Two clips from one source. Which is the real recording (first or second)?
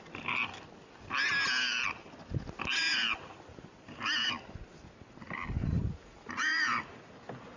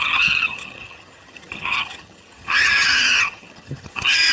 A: first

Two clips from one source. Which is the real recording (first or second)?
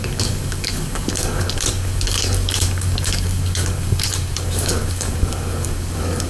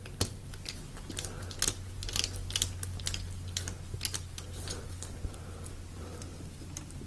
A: second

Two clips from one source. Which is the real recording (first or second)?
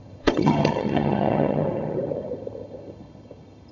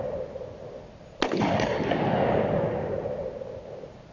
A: second